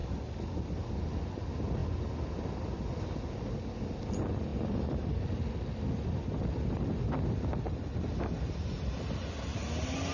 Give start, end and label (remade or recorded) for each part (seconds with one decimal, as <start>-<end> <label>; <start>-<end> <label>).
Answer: 0.0-10.1 recorded